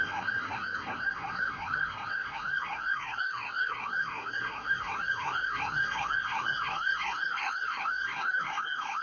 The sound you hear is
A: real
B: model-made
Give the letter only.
B